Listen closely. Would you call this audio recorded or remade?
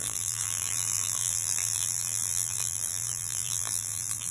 remade